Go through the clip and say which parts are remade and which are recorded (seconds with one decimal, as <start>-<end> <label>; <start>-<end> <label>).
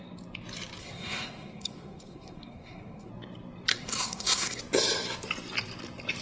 0.0-0.8 recorded; 0.8-3.1 remade; 3.1-3.7 recorded; 3.7-4.6 remade; 4.6-6.2 recorded